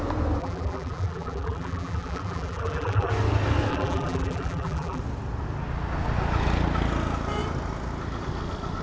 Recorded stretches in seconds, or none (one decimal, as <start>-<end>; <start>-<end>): 0.0-0.4; 3.1-3.7; 5.0-8.8